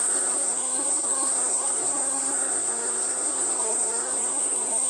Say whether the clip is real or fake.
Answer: fake